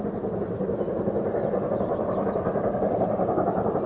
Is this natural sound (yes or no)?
yes